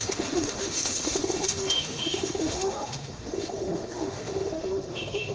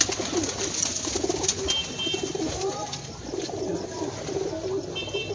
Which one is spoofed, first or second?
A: first